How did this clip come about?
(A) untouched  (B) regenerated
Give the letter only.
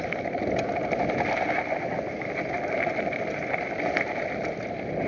A